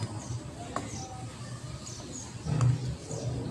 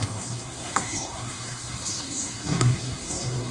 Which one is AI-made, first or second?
second